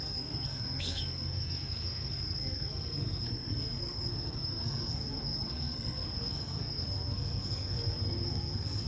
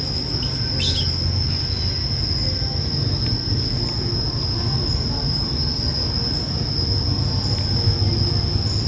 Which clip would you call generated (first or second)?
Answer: first